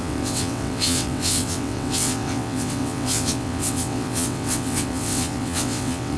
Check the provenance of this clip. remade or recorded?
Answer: remade